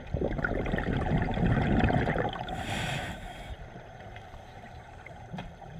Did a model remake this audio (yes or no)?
yes